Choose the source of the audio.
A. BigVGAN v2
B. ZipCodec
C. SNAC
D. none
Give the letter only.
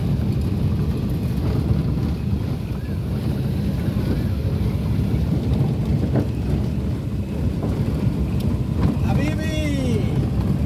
D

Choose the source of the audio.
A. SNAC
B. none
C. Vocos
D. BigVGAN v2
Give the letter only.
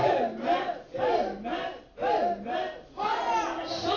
B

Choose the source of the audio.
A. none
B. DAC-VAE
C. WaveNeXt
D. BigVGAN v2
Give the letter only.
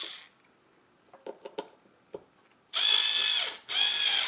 A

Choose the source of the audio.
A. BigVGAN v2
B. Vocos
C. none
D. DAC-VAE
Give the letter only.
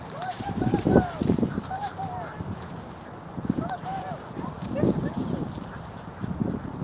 A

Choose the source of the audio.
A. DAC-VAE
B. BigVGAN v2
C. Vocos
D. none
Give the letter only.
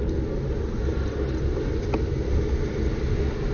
D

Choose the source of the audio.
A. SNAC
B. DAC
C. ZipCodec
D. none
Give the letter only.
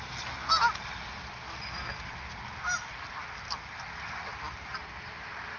D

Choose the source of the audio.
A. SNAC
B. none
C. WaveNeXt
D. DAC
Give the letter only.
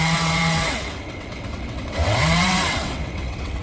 C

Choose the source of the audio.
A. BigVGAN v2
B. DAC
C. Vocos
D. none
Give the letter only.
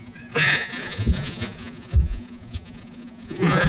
C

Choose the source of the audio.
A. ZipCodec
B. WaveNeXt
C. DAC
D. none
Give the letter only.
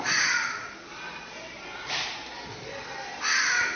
D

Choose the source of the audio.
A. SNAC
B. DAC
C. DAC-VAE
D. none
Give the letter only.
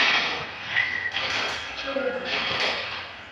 A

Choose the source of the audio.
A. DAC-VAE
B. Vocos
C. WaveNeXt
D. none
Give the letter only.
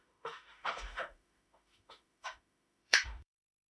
A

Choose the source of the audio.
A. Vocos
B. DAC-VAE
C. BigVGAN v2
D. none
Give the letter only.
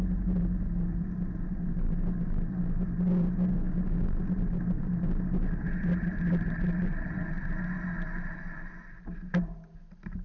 D